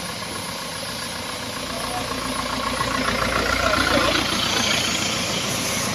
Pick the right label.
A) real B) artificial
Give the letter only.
A